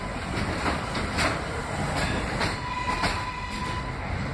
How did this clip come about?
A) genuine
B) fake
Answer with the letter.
A